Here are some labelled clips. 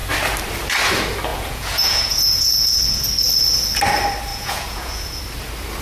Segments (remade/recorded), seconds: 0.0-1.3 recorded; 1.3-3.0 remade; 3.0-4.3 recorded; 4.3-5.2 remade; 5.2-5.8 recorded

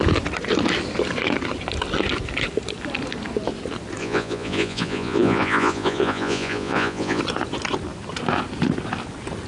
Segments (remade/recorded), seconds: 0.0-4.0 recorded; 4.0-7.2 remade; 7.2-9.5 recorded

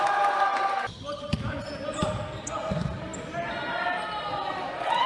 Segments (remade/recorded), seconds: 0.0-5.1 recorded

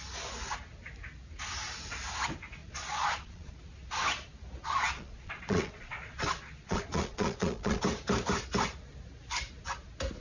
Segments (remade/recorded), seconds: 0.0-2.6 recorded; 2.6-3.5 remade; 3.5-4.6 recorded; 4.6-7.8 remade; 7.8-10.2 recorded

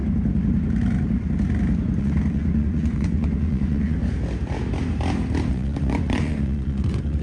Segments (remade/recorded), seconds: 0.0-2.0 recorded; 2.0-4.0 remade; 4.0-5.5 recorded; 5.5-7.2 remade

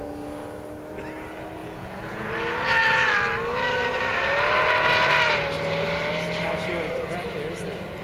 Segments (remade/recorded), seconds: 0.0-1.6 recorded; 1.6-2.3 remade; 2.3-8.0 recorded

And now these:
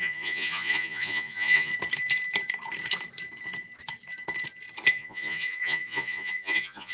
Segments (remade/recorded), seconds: 0.0-1.7 remade; 1.7-4.9 recorded; 4.9-6.9 remade

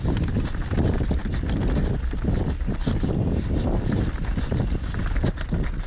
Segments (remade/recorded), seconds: 0.0-5.9 recorded